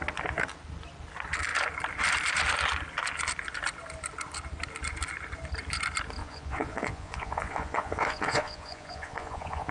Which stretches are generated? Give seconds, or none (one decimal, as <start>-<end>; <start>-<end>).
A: 6.2-9.7